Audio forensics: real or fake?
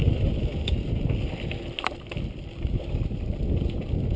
real